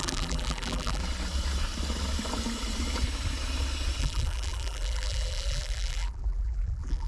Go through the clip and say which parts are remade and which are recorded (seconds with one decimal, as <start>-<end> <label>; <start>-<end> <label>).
0.0-1.0 remade; 1.0-4.0 recorded; 4.0-7.1 remade